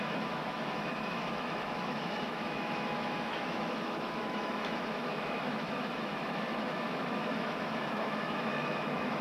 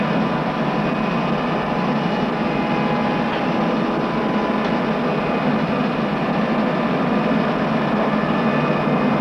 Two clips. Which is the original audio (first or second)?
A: second